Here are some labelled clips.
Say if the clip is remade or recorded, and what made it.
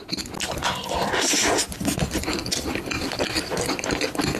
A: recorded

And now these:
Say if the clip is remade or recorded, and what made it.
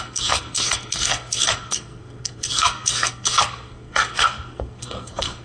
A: remade, codec, SNAC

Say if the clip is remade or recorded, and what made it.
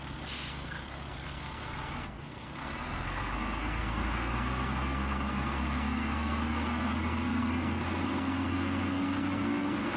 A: remade, codec, SNAC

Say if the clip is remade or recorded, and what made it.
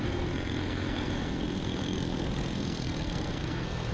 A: remade, codec, SNAC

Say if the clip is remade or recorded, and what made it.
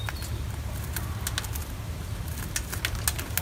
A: recorded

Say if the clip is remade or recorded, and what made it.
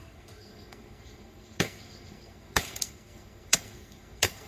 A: remade, codec, SNAC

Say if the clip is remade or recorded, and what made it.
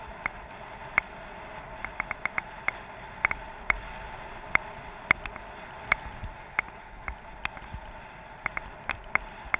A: recorded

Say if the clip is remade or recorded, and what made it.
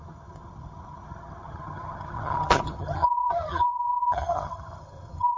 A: remade, vocoder, HiFi-GAN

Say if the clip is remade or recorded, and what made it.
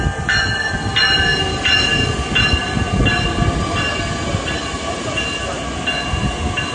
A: recorded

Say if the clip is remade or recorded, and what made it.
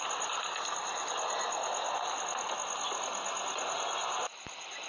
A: recorded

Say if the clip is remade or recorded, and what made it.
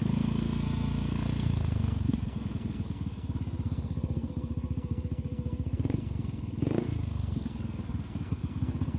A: remade, codec, SNAC